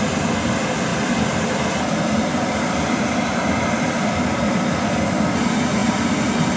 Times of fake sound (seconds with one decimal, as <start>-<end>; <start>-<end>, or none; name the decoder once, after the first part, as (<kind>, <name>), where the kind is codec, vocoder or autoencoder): 0.9-4.9 (vocoder, BigVGAN v2)